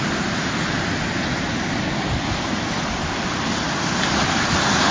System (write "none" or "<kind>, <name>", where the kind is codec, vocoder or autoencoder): none